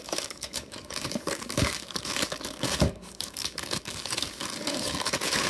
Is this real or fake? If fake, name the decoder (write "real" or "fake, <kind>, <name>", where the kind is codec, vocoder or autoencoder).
fake, codec, DAC